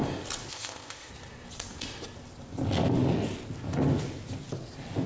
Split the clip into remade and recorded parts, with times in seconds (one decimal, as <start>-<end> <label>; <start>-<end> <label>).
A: 0.0-0.5 recorded; 0.5-1.1 remade; 1.1-5.1 recorded